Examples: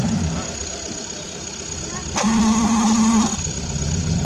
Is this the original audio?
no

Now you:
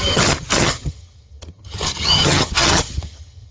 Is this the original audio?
no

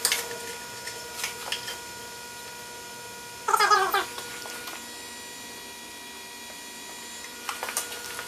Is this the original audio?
yes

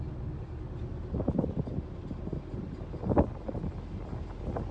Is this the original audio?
yes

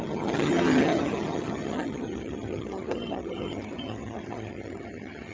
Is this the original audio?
no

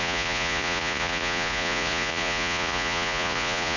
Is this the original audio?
no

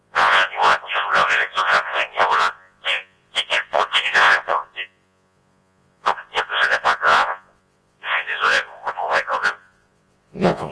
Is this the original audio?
no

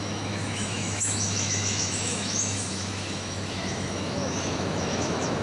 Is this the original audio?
no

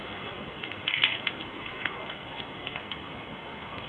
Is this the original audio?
no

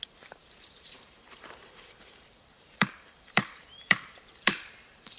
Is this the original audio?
no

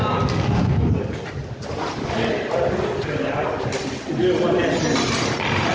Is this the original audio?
yes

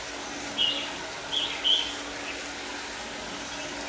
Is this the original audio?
yes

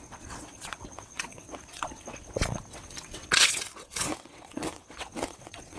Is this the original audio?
no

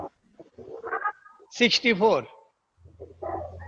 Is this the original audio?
yes